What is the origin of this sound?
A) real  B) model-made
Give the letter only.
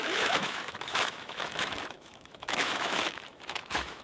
B